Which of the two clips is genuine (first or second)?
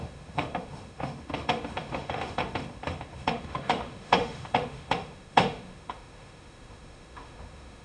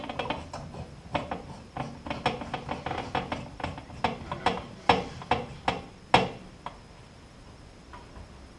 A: second